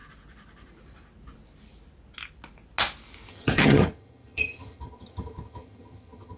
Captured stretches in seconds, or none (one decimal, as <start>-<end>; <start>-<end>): 0.0-3.3